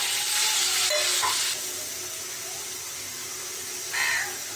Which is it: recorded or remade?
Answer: recorded